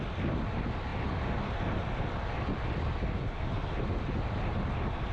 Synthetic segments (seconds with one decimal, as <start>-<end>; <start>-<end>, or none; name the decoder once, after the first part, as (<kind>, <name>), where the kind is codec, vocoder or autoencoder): none

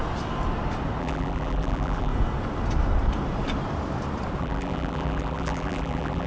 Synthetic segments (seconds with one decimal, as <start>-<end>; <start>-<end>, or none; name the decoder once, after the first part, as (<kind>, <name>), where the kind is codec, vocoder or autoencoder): 1.0-2.1 (vocoder, BigVGAN v2); 4.4-6.3